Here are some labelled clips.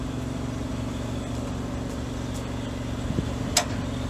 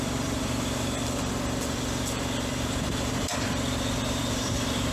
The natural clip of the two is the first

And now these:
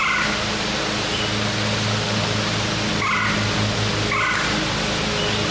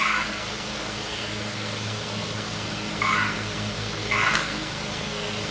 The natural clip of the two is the first